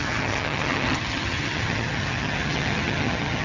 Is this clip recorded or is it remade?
remade